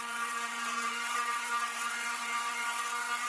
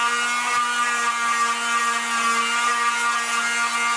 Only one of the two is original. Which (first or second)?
second